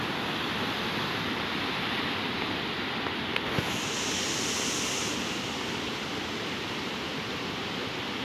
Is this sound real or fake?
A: real